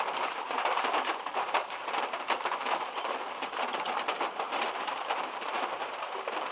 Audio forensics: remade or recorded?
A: remade